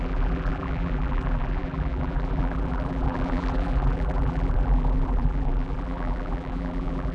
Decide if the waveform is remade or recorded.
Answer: remade